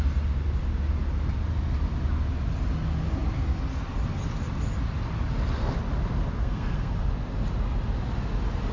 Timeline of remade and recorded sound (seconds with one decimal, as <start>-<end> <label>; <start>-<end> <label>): 0.0-6.4 recorded; 6.4-6.9 remade; 6.9-8.7 recorded

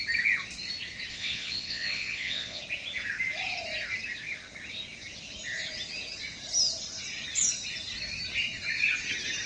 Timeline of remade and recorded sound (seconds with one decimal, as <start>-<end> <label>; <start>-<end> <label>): 0.0-1.1 recorded; 1.1-2.6 remade; 2.6-9.5 recorded